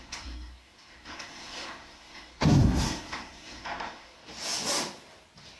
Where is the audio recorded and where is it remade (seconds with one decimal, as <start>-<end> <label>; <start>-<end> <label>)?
0.0-4.2 remade; 4.2-5.6 recorded